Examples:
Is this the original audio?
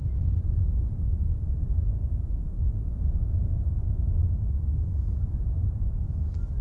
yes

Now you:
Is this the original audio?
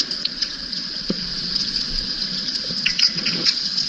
no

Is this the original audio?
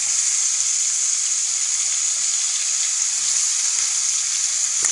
yes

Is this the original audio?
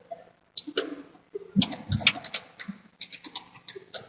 yes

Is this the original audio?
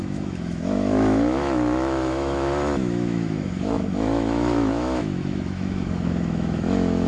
no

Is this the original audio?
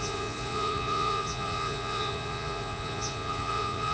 no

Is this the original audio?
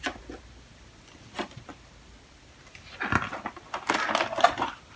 yes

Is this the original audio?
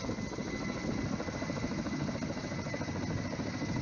yes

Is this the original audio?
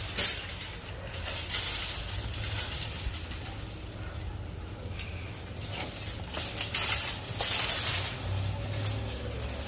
yes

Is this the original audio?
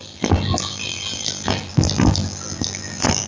no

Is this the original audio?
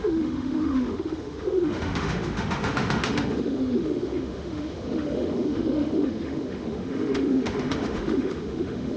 no